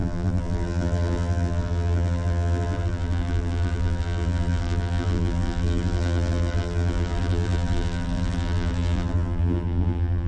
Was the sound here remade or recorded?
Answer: remade